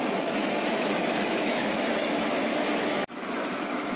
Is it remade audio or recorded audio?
remade